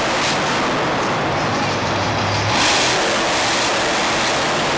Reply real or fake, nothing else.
real